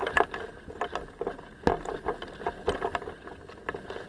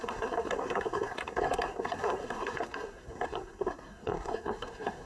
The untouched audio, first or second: first